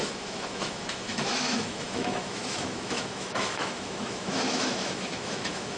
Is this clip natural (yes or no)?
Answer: no